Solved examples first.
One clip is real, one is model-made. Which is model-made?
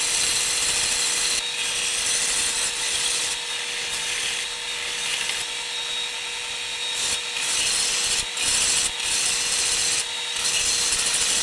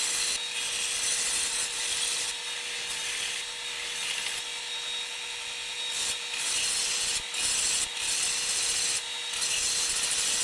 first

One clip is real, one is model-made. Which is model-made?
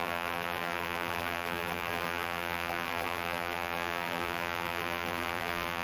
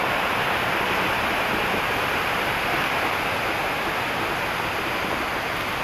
first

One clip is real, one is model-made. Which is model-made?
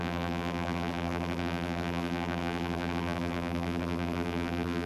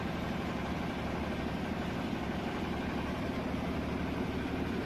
first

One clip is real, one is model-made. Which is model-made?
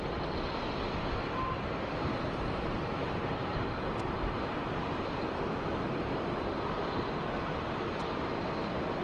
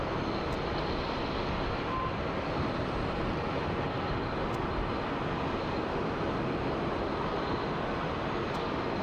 first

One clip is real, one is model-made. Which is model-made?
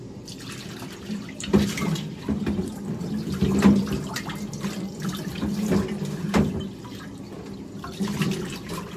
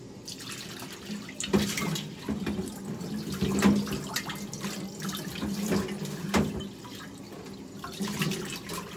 first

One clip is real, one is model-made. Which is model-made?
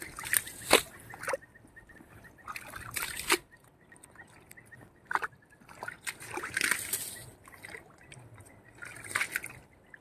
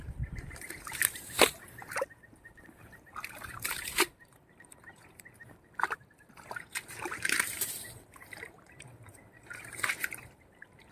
second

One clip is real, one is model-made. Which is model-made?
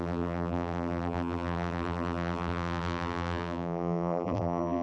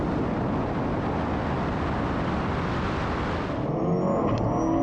first